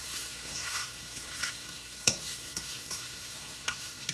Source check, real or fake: fake